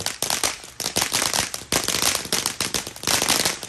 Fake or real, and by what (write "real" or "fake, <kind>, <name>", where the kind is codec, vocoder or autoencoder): real